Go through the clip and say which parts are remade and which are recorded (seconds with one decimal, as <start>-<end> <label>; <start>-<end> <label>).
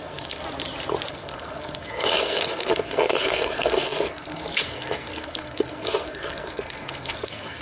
0.0-0.4 remade; 0.4-1.1 recorded; 1.1-7.6 remade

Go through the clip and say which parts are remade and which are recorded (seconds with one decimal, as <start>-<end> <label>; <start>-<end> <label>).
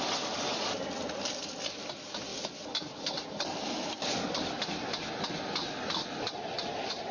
0.0-7.1 recorded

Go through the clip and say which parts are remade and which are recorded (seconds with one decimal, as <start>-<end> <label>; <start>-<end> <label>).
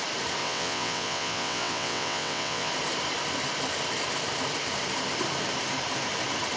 0.0-0.4 recorded; 0.4-2.7 remade; 2.7-6.6 recorded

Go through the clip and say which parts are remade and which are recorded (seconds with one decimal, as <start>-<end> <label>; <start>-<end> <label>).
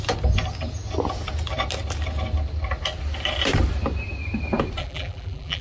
0.0-4.8 recorded; 4.8-5.6 remade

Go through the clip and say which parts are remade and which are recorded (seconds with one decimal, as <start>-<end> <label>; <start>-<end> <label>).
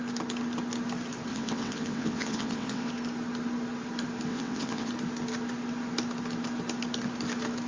0.0-1.3 recorded; 1.3-2.9 remade; 2.9-4.3 recorded; 4.3-4.9 remade; 4.9-7.7 recorded